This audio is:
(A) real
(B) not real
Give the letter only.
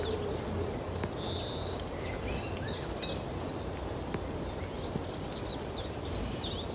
A